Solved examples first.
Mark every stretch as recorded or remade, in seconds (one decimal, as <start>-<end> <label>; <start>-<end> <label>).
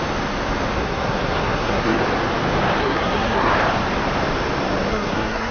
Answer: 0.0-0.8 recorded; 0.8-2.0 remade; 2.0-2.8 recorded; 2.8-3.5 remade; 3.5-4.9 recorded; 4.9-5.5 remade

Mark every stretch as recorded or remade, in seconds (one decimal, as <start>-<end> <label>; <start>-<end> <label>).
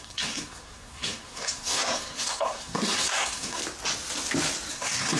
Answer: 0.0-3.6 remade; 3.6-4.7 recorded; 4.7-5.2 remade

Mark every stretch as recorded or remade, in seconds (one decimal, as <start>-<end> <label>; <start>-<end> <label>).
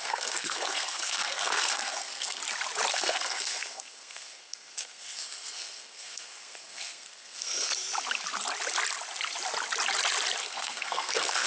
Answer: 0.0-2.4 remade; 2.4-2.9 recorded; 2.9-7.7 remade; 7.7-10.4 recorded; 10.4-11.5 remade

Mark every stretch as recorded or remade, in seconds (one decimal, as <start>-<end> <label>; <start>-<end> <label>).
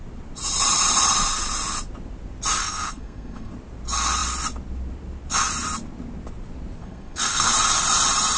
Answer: 0.0-2.6 recorded; 2.6-3.5 remade; 3.5-6.8 recorded; 6.8-7.5 remade; 7.5-8.4 recorded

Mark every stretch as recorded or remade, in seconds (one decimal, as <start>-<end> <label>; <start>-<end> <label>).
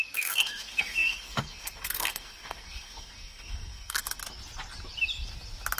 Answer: 0.0-4.2 remade; 4.2-5.8 recorded